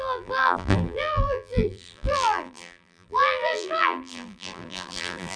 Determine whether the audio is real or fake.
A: fake